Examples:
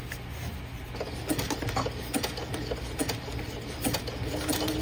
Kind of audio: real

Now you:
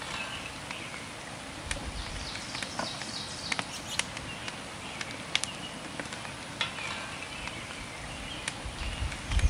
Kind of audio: real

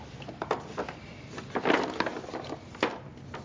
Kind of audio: real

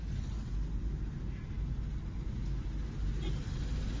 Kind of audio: real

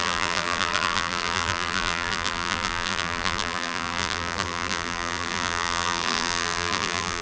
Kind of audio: fake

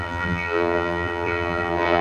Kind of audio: fake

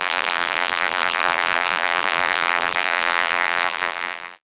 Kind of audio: fake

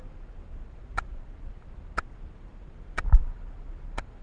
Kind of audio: real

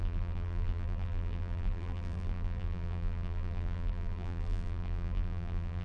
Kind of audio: fake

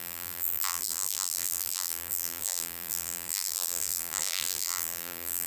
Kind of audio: fake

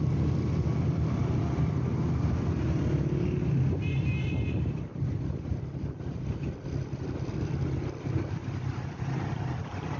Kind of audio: fake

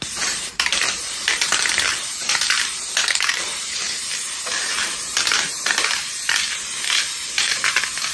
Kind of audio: fake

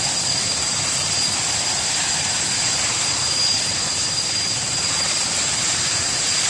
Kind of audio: fake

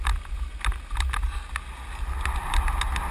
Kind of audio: real